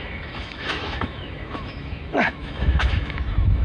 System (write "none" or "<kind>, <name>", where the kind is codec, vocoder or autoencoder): autoencoder, DAC-VAE